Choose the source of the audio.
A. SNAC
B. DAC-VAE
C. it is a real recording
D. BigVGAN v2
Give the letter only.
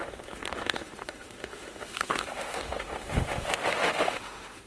B